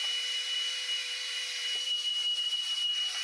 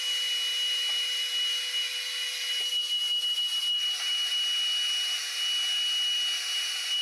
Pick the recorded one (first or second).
second